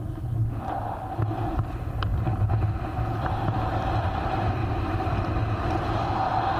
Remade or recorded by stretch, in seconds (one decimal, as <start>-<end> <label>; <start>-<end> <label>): 0.0-4.6 recorded; 4.6-5.5 remade; 5.5-6.6 recorded